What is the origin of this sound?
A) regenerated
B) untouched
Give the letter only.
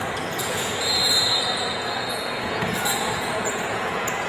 A